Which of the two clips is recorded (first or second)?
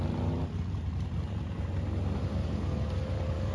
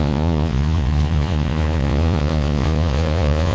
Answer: first